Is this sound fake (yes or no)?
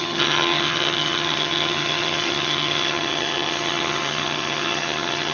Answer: yes